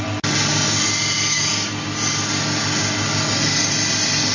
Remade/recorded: recorded